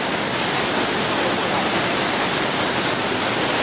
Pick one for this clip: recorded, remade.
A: recorded